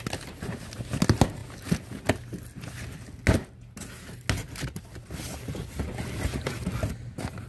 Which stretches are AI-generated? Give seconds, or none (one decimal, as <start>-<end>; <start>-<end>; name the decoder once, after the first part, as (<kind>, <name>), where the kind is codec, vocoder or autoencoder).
none